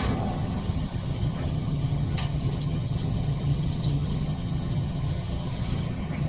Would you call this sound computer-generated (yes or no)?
yes